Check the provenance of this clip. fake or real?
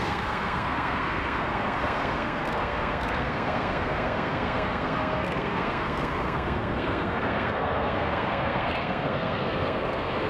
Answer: fake